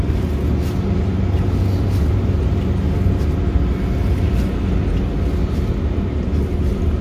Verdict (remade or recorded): recorded